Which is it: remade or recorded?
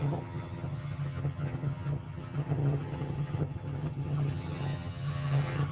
remade